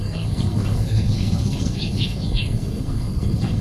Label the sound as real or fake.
fake